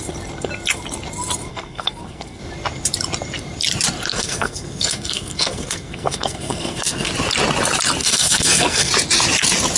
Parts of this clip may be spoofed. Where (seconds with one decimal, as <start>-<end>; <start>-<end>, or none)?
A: 1.5-2.4; 4.1-7.1; 8.0-8.9